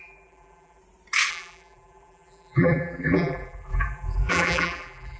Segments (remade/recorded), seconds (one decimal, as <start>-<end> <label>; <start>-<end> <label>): 0.0-0.8 remade; 0.8-1.3 recorded; 1.3-5.2 remade